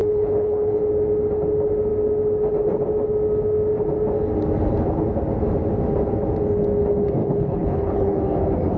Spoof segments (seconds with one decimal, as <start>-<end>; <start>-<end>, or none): 0.0-0.8; 7.2-8.2